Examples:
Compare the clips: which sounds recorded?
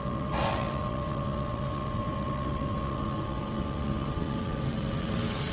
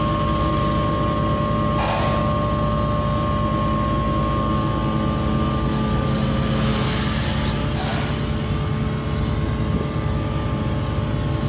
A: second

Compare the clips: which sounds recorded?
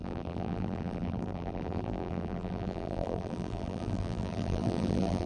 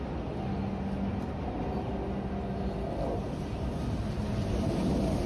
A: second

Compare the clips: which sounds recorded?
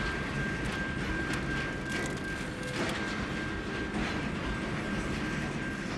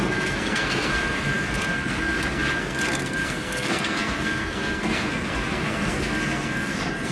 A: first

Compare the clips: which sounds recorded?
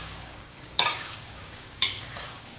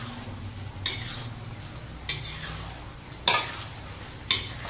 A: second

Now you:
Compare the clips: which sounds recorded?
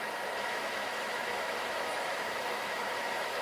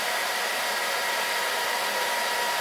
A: second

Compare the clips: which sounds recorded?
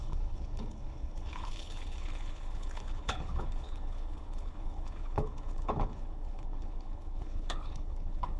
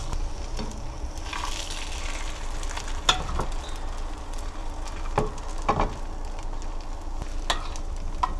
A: second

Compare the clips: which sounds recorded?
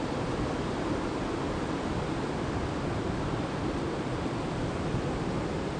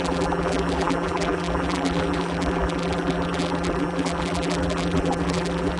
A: first